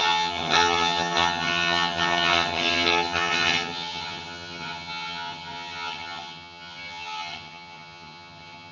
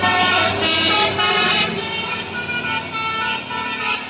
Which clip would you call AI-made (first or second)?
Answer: first